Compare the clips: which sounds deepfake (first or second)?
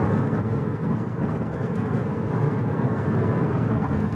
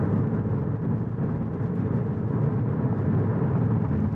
first